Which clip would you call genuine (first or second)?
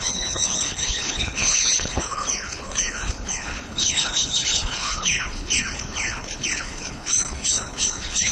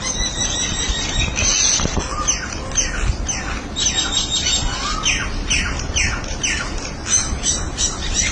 second